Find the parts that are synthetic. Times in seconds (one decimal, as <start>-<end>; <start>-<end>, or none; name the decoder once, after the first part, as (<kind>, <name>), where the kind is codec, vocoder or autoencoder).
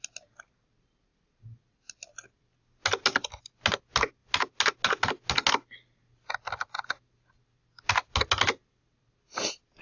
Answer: none